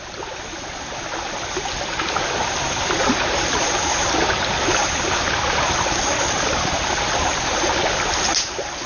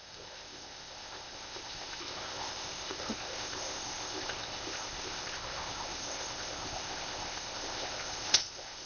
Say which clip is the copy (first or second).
second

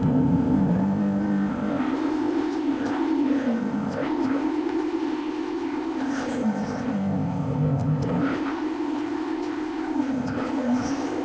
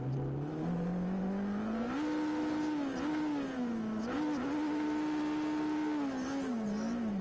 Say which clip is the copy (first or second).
first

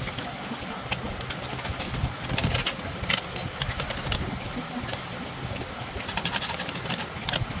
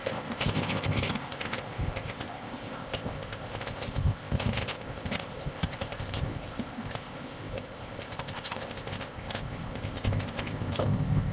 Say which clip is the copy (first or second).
second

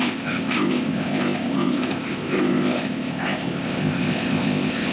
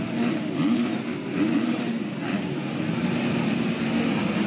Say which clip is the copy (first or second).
first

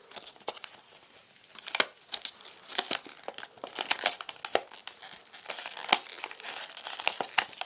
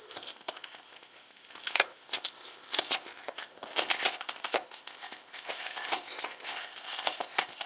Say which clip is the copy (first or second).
second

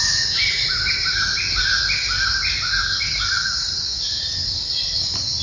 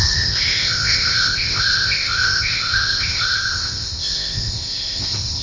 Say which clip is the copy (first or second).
second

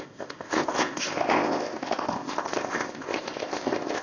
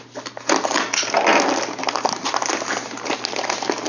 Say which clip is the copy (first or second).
first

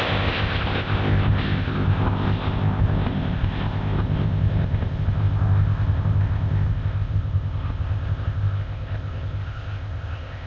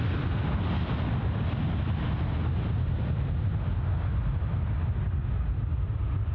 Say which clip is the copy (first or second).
first